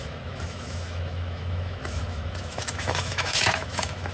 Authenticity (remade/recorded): remade